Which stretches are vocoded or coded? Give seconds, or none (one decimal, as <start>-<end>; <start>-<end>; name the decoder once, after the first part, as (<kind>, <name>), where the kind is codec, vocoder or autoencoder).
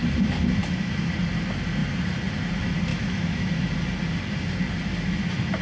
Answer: 0.6-1.1 (autoencoder, DAC-VAE); 2.9-3.5